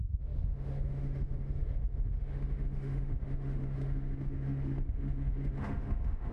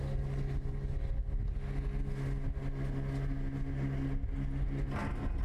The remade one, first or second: first